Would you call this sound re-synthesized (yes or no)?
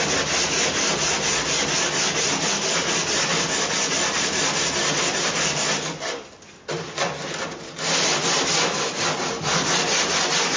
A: no